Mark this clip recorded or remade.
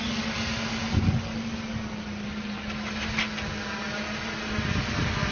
recorded